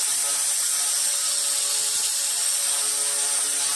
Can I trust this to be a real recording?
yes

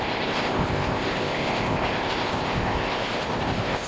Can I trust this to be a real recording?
no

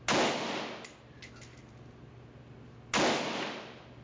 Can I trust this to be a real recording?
yes